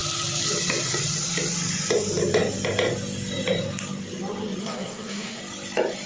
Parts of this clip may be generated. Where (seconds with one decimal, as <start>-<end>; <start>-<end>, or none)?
4.6-5.4